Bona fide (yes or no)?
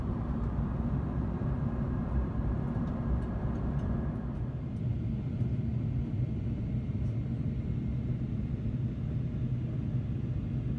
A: yes